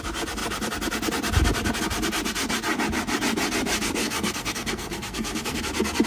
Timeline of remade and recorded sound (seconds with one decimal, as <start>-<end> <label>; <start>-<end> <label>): 0.0-4.0 recorded; 4.0-5.6 remade; 5.6-6.1 recorded